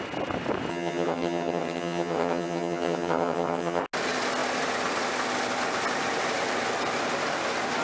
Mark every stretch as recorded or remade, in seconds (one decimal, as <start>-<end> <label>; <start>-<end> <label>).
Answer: 0.0-0.7 recorded; 0.7-3.8 remade; 3.8-7.8 recorded